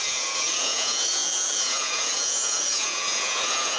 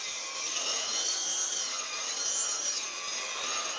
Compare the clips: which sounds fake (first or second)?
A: first